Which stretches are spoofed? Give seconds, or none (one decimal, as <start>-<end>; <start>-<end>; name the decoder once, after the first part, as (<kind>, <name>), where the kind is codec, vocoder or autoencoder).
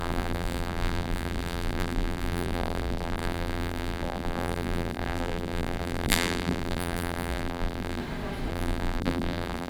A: 0.0-8.0 (vocoder, BigVGAN v2); 8.5-9.7